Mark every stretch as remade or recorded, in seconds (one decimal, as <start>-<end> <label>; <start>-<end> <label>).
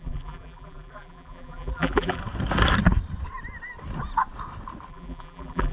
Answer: 0.0-2.2 remade; 2.2-4.9 recorded; 4.9-5.7 remade